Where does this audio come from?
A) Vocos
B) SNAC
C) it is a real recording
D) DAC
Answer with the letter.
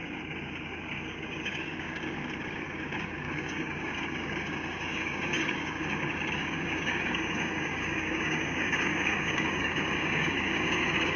D